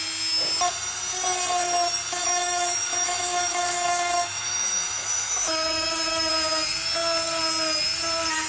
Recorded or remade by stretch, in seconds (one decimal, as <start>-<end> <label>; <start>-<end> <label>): 0.0-2.2 recorded; 2.2-6.3 remade; 6.3-8.5 recorded